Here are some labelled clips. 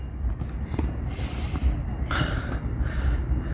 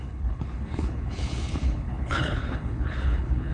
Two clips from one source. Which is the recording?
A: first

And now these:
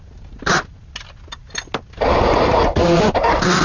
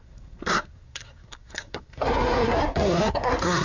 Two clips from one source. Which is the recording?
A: first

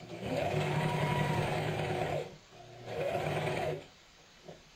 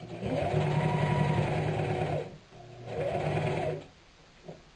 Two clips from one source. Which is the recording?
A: second